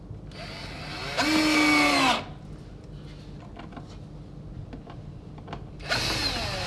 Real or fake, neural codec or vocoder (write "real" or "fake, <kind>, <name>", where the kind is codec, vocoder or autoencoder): real